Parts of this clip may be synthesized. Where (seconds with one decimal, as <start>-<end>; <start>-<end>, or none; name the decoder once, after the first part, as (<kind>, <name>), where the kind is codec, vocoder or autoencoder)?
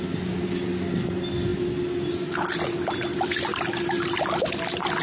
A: none